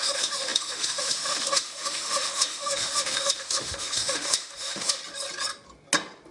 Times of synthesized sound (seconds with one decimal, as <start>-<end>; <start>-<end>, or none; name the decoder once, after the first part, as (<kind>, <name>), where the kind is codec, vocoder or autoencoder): 0.0-5.0 (autoencoder, DAC-VAE)